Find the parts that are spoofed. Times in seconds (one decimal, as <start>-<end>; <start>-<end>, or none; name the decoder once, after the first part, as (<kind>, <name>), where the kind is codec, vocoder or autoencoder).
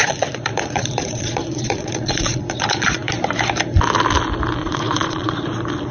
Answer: 0.0-3.1 (vocoder, Vocos); 4.6-5.4